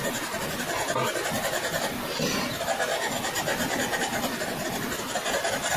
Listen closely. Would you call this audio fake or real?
real